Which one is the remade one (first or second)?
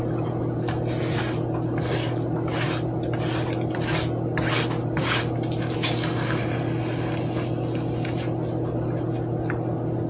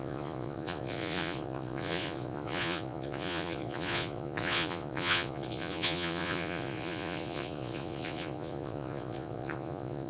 second